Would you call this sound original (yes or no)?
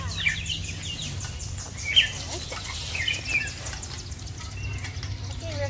yes